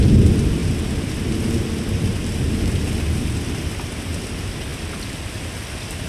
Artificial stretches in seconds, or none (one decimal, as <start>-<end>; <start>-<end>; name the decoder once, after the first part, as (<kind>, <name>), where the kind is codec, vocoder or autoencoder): none